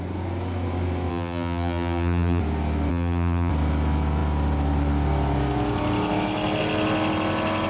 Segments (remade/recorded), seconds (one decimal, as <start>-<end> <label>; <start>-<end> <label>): 0.0-1.1 recorded; 1.1-2.4 remade; 2.4-2.9 recorded; 2.9-3.5 remade; 3.5-7.7 recorded